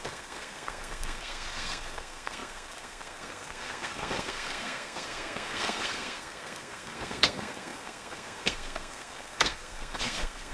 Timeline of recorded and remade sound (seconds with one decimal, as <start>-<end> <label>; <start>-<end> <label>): 0.0-10.5 remade